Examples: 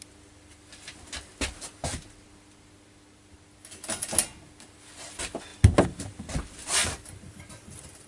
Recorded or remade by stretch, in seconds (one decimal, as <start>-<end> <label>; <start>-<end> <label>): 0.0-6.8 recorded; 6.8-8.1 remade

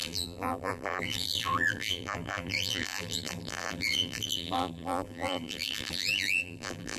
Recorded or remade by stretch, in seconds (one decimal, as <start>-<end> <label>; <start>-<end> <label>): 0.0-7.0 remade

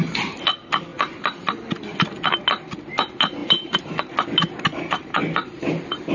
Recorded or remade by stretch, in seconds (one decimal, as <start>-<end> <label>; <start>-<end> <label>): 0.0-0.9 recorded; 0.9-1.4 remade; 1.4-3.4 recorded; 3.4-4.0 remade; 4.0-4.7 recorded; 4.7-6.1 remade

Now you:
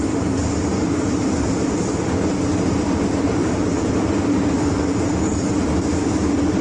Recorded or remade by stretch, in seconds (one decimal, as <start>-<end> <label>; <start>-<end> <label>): 0.0-0.4 recorded; 0.4-1.9 remade; 1.9-3.4 recorded; 3.4-5.5 remade; 5.5-6.6 recorded